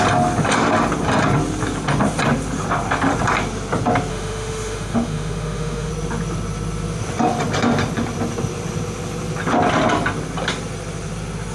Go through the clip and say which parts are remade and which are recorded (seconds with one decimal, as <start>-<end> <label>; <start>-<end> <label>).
0.0-4.1 recorded; 4.1-5.9 remade; 5.9-11.5 recorded